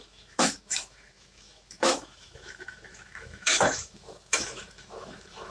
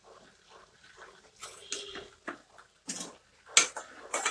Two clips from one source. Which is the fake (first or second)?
first